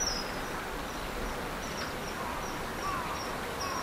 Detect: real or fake real